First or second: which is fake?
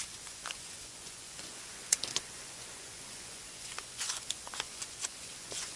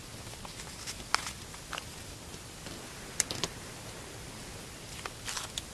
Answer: first